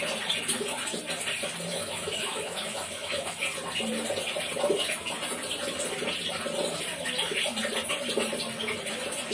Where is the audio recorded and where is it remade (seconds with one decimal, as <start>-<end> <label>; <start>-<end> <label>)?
0.0-1.7 recorded; 1.7-3.4 remade; 3.4-9.3 recorded